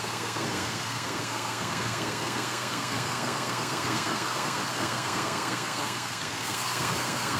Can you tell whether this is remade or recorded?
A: remade